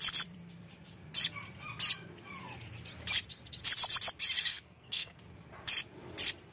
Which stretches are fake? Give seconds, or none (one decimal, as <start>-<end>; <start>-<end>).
4.5-5.2